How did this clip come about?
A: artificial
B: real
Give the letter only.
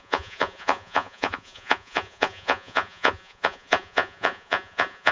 A